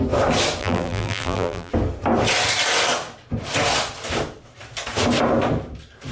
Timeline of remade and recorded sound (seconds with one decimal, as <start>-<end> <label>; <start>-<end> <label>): 0.0-0.6 recorded; 0.6-1.7 remade; 1.7-6.1 recorded